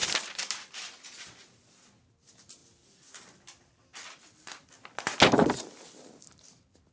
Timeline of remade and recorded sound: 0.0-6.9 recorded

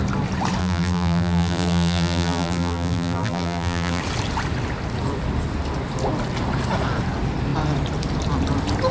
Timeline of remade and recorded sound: 0.0-0.6 recorded; 0.6-4.0 remade; 4.0-8.9 recorded

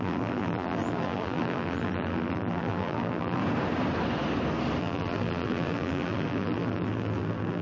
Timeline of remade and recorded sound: 0.0-3.4 remade; 3.4-4.8 recorded; 4.8-7.6 remade

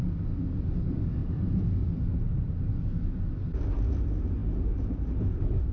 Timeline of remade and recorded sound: 0.0-5.7 recorded

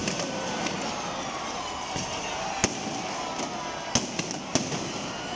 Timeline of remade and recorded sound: 0.0-0.7 remade; 0.7-5.4 recorded

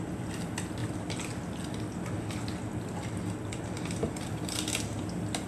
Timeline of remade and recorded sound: 0.0-5.5 recorded